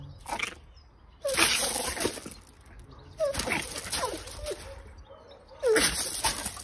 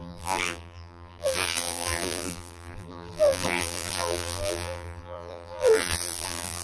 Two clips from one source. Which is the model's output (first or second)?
second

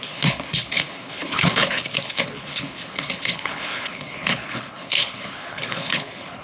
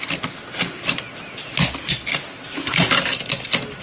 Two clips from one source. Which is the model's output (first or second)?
first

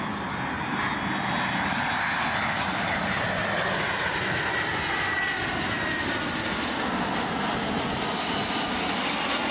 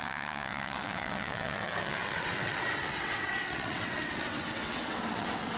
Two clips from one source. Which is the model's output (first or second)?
second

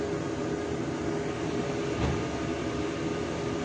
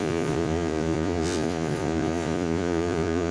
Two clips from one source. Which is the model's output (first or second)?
second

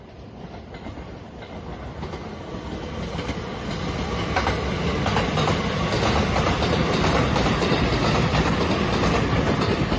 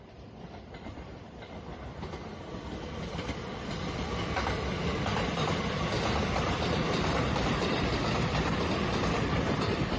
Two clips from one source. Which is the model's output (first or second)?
second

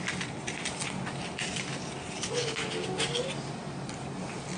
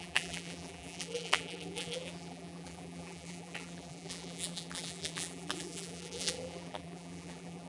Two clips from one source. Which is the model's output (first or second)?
second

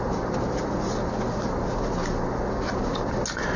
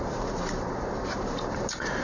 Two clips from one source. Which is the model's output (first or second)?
second